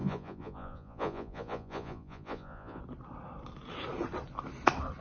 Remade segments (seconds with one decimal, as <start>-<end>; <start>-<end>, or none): 0.0-2.8